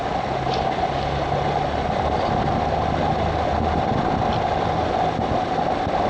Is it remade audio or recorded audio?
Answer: recorded